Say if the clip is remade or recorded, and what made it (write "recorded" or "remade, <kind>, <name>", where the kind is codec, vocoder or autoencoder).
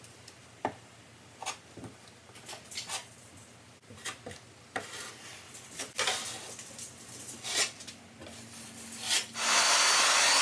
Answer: recorded